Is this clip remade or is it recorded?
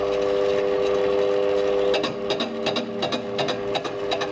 recorded